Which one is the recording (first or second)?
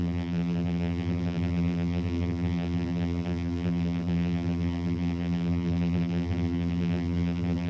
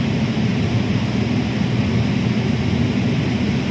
second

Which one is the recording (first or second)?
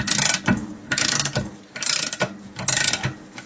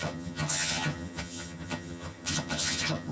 first